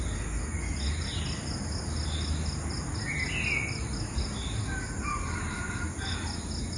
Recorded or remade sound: recorded